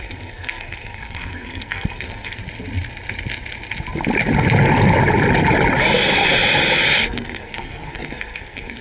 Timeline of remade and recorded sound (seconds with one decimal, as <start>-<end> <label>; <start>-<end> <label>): 0.0-2.4 remade; 2.4-7.0 recorded; 7.0-8.8 remade